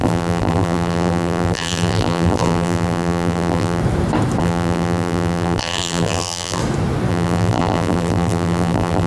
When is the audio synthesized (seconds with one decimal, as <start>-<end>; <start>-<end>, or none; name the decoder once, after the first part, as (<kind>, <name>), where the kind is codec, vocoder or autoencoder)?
0.0-3.8 (vocoder, BigVGAN v2); 4.4-6.6; 7.1-9.1